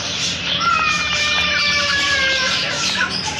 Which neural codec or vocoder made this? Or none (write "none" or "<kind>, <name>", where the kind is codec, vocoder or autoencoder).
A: none